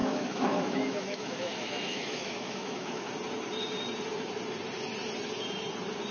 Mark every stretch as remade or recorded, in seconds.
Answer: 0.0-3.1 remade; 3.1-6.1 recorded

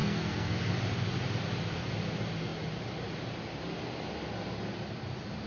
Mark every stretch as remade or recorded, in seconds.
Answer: 0.0-0.7 remade; 0.7-5.5 recorded

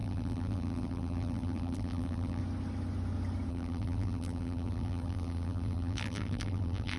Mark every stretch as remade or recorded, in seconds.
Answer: 0.0-2.4 remade; 2.4-3.5 recorded; 3.5-7.0 remade

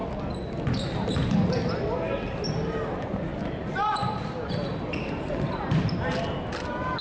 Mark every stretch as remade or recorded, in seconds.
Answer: 0.0-3.3 recorded; 3.3-5.8 remade; 5.8-7.0 recorded